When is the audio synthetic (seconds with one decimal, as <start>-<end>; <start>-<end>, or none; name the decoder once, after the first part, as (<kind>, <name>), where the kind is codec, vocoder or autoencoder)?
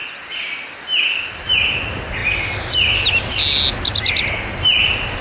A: none